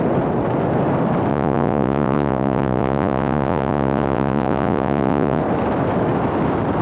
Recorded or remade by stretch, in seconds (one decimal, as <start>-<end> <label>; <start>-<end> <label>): 0.0-1.3 recorded; 1.3-5.4 remade; 5.4-6.8 recorded